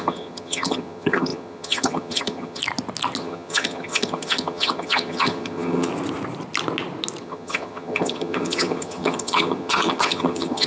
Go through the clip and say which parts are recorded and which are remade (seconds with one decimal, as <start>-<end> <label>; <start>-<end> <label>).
0.0-2.6 remade; 2.6-3.2 recorded; 3.2-5.9 remade; 5.9-7.2 recorded; 7.2-10.7 remade